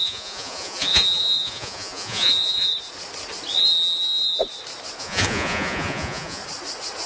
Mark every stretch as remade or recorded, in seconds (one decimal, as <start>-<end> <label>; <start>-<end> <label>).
0.0-2.7 remade; 2.7-5.0 recorded; 5.0-6.4 remade; 6.4-7.1 recorded